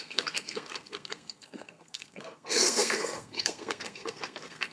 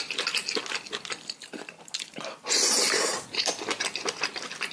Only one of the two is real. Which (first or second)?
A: second